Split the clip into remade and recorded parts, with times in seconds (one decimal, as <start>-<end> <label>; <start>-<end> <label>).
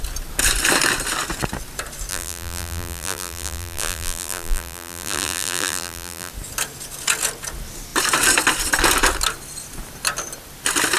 0.0-2.1 recorded; 2.1-6.3 remade; 6.3-11.0 recorded